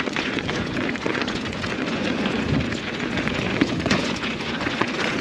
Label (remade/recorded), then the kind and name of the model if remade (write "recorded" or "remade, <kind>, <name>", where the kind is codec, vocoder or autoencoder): remade, vocoder, Vocos